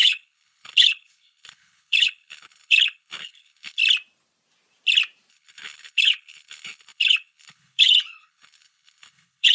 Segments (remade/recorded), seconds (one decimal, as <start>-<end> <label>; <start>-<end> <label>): 0.0-3.8 remade; 3.8-5.3 recorded; 5.3-9.5 remade